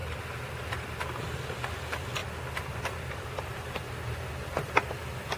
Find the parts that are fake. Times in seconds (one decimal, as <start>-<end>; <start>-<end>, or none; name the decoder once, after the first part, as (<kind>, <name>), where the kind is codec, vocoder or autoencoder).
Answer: 2.2-4.3 (vocoder, BigVGAN v2)